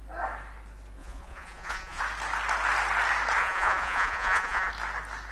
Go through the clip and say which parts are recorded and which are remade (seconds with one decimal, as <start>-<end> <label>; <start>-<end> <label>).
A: 0.0-1.0 recorded; 1.0-2.0 remade; 2.0-3.4 recorded; 3.4-4.7 remade; 4.7-5.3 recorded